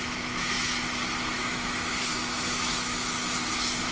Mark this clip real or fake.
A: fake